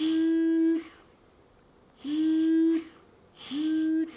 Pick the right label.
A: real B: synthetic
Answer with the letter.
A